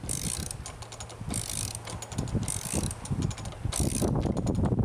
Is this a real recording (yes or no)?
yes